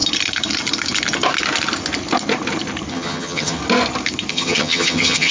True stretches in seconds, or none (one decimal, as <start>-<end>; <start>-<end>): 0.0-2.9; 3.6-4.3